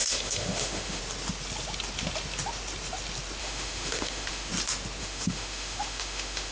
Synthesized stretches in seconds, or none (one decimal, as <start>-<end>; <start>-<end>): 0.0-1.0; 3.4-4.5; 5.0-6.5